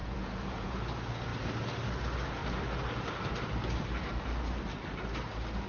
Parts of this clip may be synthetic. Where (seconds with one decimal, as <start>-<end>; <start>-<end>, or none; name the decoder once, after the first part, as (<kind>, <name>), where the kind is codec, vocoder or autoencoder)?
0.0-0.8 (vocoder, Vocos)